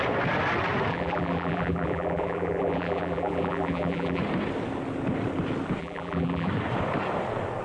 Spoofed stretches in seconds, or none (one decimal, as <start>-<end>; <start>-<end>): 0.9-4.2; 5.8-6.5